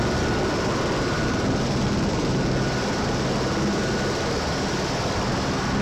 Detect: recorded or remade recorded